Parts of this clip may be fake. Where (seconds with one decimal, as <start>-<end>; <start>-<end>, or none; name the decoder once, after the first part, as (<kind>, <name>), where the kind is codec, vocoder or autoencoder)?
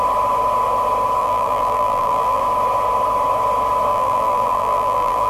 1.2-2.4 (vocoder, BigVGAN v2); 3.9-5.3